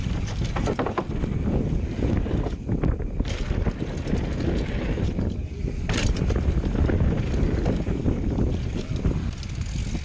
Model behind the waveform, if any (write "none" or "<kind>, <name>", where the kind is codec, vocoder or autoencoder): none